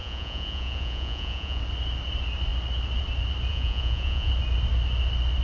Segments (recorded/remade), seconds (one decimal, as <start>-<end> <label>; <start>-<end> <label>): 0.0-1.6 remade; 1.6-3.5 recorded; 3.5-4.3 remade; 4.3-5.4 recorded